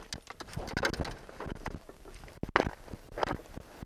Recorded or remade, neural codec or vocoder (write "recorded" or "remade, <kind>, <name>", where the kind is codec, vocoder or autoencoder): recorded